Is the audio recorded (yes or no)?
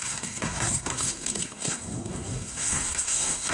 no